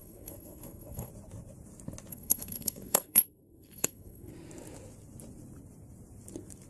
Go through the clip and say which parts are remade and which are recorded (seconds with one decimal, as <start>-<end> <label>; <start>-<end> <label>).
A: 0.0-1.1 remade; 1.1-2.1 recorded; 2.1-4.3 remade; 4.3-6.7 recorded